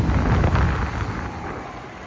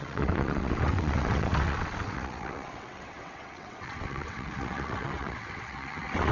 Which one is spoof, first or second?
second